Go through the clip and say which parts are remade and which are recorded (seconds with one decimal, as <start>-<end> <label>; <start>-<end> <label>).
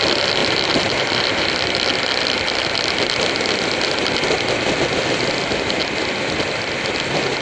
0.0-0.4 recorded; 0.4-3.2 remade; 3.2-5.8 recorded; 5.8-6.7 remade; 6.7-7.4 recorded